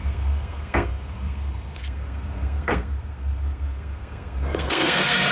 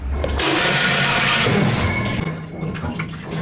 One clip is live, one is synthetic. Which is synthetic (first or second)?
first